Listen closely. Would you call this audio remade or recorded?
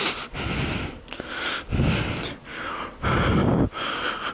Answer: recorded